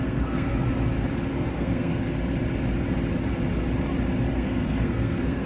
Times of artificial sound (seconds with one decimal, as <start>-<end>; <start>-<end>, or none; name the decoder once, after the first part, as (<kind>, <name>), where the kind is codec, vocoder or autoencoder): 0.0-0.7 (codec, SNAC); 1.3-2.0; 4.3-5.5